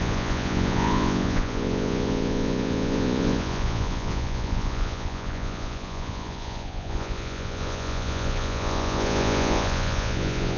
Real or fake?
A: fake